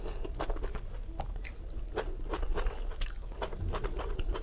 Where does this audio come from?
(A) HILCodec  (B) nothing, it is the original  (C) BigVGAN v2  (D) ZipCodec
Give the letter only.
B